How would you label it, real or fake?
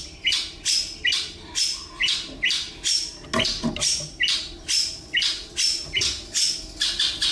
real